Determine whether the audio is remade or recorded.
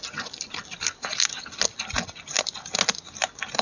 recorded